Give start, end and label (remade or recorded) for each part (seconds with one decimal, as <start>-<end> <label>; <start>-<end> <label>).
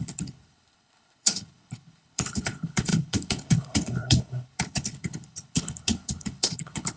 0.0-7.0 remade